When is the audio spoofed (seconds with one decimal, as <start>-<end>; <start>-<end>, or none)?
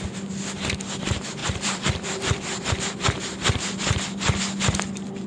1.4-2.8